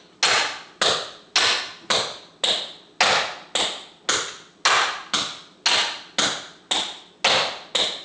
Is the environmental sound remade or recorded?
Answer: recorded